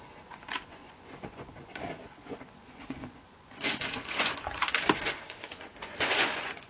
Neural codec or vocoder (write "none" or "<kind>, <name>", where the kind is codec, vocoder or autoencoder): vocoder, Vocos